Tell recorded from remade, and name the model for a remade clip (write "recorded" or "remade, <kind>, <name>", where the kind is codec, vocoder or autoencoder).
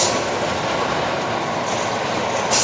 recorded